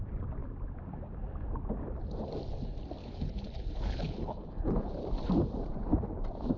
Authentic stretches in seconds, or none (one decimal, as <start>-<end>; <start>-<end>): 0.0-3.0; 4.9-6.6